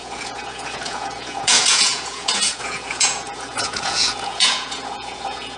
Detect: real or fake fake